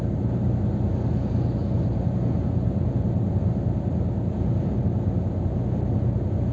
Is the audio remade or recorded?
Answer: recorded